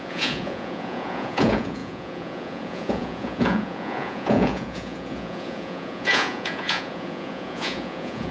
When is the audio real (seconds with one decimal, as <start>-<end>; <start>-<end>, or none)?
none